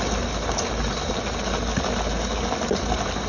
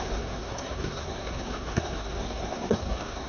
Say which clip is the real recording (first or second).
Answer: first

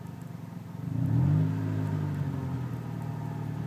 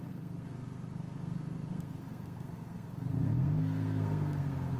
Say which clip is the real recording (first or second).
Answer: first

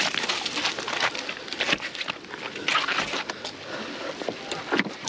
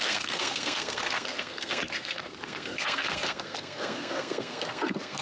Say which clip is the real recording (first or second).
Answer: first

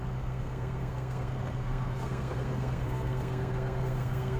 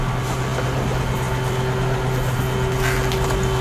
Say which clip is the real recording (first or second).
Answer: second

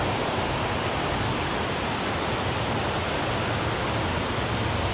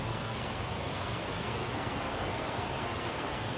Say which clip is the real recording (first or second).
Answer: first